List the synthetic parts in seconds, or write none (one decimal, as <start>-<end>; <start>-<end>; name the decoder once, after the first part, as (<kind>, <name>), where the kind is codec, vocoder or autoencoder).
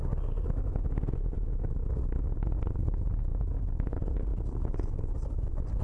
4.3-5.8 (vocoder, BigVGAN v2)